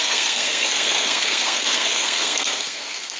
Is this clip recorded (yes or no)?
no